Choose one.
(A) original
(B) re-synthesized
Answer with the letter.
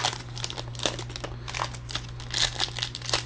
A